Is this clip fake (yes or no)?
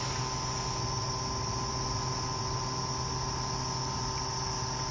no